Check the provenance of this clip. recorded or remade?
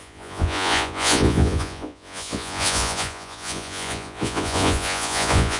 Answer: remade